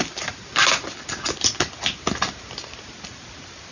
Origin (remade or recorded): recorded